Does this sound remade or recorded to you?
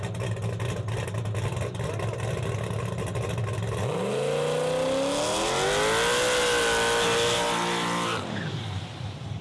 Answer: recorded